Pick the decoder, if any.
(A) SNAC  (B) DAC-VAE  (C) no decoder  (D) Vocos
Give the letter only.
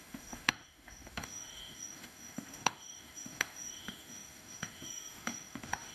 B